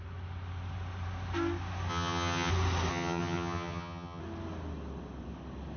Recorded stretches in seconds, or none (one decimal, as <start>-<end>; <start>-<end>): 0.0-1.9; 2.5-2.9; 4.2-5.8